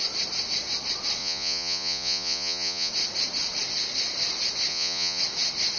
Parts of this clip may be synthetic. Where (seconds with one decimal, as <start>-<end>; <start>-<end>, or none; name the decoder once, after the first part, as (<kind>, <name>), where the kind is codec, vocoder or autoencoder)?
1.2-2.9 (vocoder, Vocos); 4.7-5.2

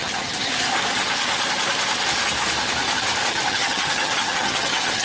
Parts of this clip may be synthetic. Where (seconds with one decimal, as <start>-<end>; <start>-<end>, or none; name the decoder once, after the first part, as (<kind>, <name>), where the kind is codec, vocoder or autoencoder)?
0.0-0.5 (vocoder, HiFi-GAN); 3.5-5.0